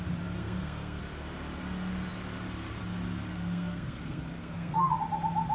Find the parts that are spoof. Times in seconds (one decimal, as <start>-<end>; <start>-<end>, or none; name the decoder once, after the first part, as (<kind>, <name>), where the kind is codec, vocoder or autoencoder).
0.4-1.0 (codec, SNAC); 3.3-4.9